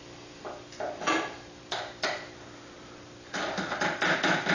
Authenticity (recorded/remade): recorded